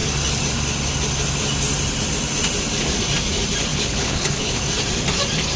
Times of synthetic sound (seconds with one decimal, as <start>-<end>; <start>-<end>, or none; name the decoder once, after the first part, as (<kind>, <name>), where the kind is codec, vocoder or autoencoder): 3.7-4.6 (codec, HILCodec)